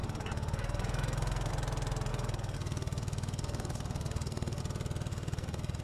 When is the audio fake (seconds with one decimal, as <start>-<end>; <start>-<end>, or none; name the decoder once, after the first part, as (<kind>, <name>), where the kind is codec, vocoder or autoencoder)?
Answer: 0.0-1.5 (codec, SNAC); 2.1-4.6; 5.1-5.8